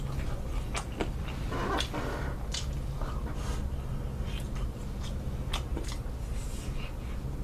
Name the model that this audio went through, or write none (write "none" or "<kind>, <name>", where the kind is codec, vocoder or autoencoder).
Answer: none